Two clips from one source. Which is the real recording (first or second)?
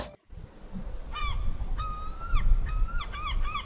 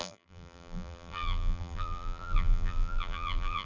first